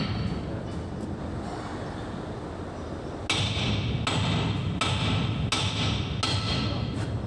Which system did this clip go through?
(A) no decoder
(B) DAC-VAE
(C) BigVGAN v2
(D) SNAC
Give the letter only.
A